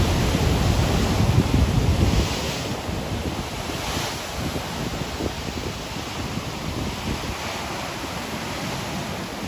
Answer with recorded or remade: recorded